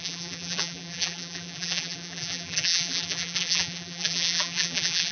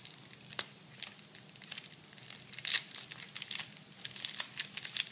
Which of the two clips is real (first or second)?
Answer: second